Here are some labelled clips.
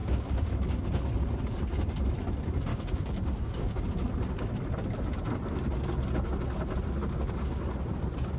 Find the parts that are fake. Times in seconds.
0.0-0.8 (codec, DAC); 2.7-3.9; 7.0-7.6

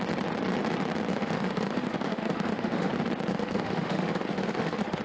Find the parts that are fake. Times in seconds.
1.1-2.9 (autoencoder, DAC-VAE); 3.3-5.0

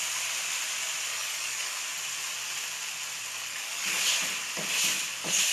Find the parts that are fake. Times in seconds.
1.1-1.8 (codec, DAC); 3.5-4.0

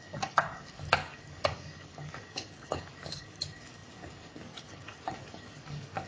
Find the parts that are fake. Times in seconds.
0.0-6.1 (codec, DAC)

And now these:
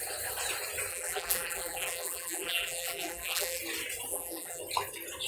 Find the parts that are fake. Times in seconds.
0.9-3.6 (vocoder, BigVGAN v2); 4.1-4.6